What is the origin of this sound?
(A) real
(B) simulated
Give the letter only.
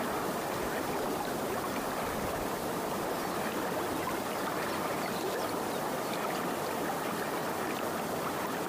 A